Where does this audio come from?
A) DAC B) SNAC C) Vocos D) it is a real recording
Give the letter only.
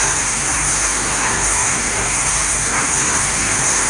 B